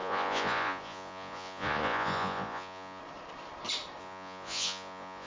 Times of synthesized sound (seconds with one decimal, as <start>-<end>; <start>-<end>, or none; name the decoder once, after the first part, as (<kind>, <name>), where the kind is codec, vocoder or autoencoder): 0.0-3.0 (vocoder, Vocos); 4.0-5.3